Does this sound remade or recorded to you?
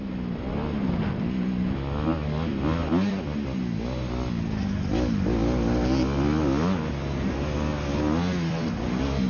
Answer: recorded